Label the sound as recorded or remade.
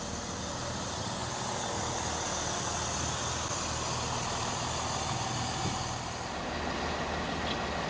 recorded